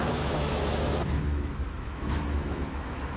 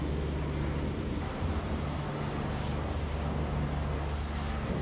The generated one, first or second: first